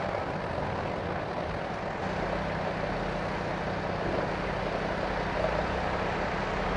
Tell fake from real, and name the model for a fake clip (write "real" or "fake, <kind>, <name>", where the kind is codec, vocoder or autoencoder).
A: real